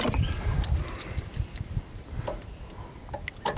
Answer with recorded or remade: recorded